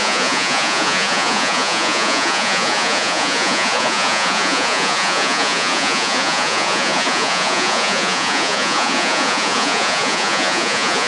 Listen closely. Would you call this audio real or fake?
fake